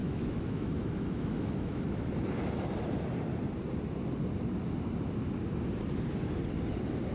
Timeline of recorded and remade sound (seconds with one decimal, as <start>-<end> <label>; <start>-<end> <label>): 0.0-2.1 remade; 2.1-7.1 recorded